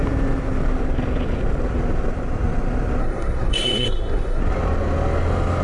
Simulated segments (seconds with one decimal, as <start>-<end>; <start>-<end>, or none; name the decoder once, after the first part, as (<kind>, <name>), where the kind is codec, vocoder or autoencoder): 3.0-4.4 (codec, SNAC)

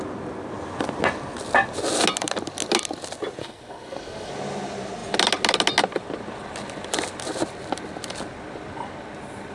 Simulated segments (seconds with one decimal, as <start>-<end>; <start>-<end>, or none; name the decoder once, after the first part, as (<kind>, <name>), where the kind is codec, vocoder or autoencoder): 3.4-4.3 (codec, SNAC)

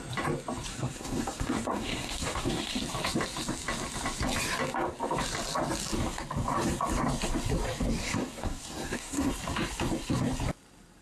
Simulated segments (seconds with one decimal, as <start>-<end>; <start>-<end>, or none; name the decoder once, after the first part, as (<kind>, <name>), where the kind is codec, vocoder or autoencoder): 0.7-2.8 (codec, SNAC); 8.0-9.3

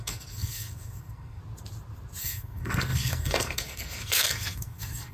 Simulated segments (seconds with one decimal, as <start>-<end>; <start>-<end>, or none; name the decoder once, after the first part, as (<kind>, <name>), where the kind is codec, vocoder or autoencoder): 0.0-1.4 (codec, SNAC); 2.2-5.1

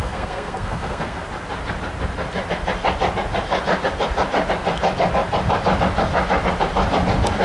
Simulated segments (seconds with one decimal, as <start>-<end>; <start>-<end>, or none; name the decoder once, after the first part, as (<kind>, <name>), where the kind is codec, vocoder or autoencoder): 0.0-1.2 (codec, SNAC)